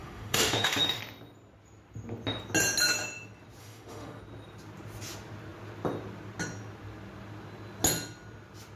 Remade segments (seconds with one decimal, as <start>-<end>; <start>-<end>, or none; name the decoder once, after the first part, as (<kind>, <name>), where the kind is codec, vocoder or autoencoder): 0.0-1.0 (autoencoder, DAC-VAE); 3.6-4.2